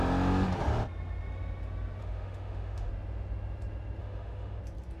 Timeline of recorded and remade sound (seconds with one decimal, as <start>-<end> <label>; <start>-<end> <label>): 0.0-2.0 recorded; 2.0-2.9 remade; 2.9-4.0 recorded; 4.0-4.6 remade; 4.6-5.0 recorded